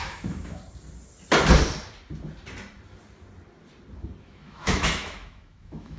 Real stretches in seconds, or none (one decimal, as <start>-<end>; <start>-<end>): 0.6-4.2